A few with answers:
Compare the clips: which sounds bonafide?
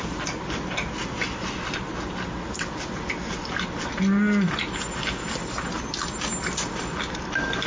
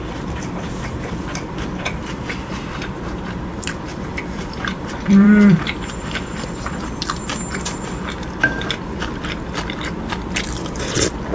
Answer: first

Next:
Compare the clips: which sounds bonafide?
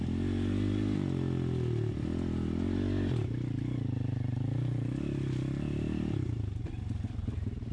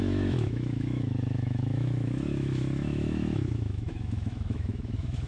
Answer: first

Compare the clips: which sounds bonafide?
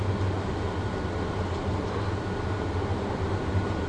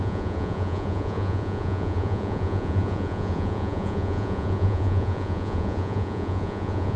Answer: first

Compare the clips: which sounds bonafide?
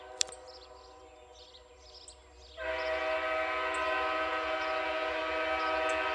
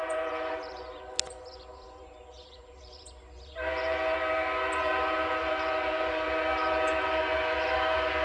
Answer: first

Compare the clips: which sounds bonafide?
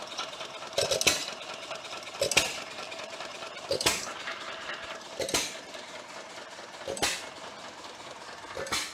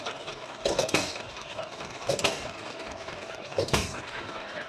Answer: first